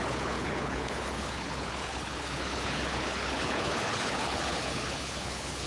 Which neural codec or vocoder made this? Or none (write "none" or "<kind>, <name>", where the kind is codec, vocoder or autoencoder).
codec, HILCodec